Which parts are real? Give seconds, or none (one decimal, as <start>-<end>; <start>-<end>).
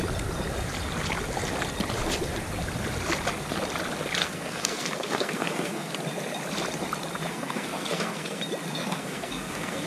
0.0-4.2; 5.9-7.3; 8.4-8.8